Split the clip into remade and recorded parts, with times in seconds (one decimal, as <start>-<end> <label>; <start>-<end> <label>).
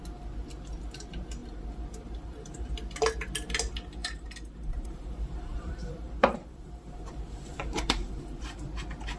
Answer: 0.0-1.4 recorded; 1.4-2.7 remade; 2.7-4.0 recorded; 4.0-8.4 remade; 8.4-9.2 recorded